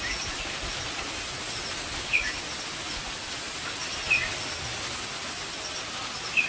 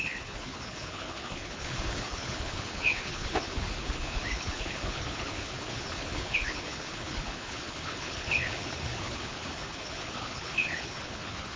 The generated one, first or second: second